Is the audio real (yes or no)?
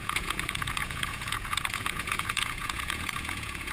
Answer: no